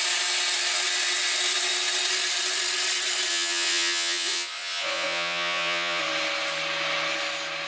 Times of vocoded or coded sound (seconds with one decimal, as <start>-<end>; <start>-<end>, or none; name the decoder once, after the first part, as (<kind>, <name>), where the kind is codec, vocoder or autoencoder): 3.3-6.0 (vocoder, Vocos)